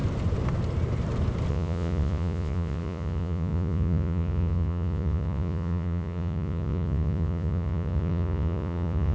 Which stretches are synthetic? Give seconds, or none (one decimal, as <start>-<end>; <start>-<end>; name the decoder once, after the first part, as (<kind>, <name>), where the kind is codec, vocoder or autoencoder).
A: 1.5-9.1 (vocoder, Vocos)